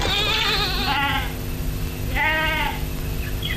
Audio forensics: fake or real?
real